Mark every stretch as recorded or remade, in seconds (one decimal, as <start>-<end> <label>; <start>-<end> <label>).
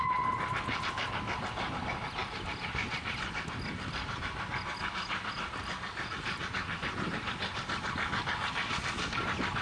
0.0-9.6 recorded